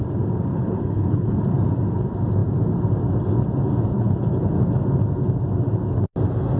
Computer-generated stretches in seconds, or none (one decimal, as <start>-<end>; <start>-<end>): 0.5-1.4; 3.9-4.5